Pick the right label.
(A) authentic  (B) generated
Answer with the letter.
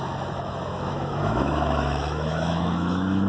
B